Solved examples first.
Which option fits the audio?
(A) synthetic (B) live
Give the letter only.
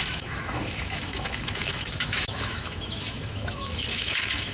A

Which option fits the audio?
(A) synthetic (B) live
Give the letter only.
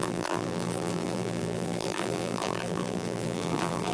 A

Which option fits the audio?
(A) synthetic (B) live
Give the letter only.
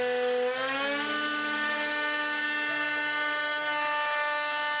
B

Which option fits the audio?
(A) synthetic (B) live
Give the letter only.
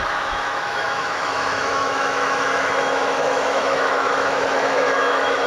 A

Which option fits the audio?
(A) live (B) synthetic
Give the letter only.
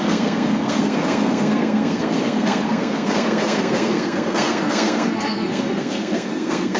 B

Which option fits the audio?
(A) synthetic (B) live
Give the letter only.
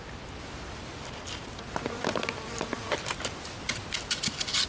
B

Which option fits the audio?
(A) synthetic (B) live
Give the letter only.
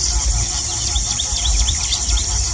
B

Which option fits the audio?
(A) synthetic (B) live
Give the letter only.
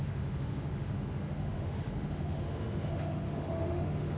A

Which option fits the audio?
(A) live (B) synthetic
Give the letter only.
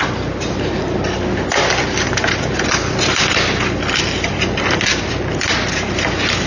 A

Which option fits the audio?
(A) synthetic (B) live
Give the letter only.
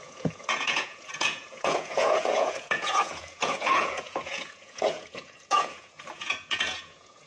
A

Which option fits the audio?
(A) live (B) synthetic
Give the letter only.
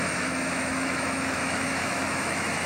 B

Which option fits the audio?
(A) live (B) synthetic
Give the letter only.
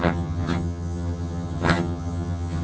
B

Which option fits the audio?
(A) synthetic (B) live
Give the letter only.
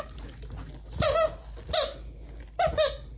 B